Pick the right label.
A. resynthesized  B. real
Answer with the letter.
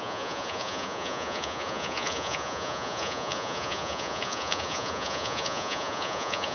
A